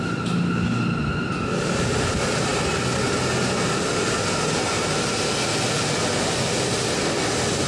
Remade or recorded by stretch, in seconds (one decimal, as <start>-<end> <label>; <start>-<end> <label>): 0.0-7.7 recorded